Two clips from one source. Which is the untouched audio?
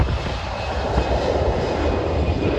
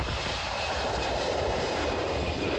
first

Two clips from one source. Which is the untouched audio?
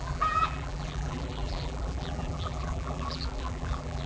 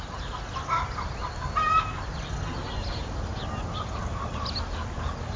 second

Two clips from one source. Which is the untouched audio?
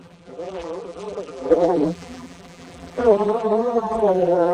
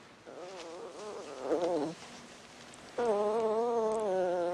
second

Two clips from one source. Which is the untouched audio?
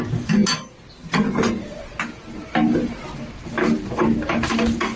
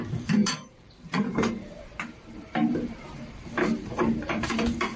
first